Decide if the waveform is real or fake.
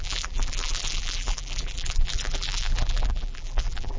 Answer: fake